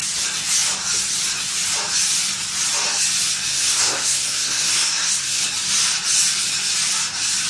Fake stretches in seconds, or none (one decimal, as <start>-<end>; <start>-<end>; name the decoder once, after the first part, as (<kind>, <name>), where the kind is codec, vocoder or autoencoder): 3.5-5.4 (codec, SNAC)